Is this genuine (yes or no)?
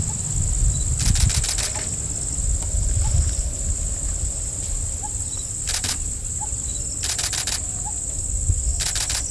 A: yes